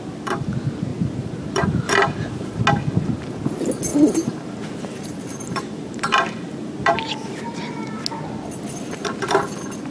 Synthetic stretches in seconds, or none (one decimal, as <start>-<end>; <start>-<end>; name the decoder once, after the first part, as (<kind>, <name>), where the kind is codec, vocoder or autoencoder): 0.9-2.6 (vocoder, BigVGAN v2); 3.9-7.6